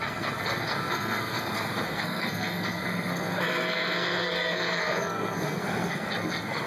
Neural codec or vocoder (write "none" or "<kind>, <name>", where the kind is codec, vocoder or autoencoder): codec, SNAC